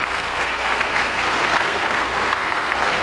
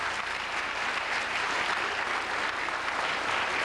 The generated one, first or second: first